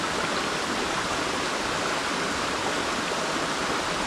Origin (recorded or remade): recorded